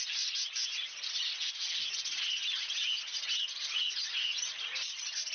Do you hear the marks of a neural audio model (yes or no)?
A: no